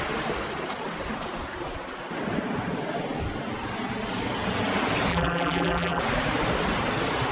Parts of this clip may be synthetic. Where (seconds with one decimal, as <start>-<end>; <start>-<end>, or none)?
5.1-6.0